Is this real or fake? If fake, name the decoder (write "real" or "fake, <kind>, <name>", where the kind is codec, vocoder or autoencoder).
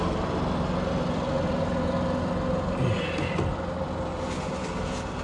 real